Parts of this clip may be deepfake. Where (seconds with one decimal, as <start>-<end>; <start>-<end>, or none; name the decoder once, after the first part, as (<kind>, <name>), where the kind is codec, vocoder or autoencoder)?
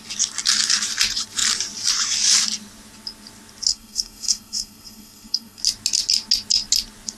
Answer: 3.7-5.6 (codec, SNAC)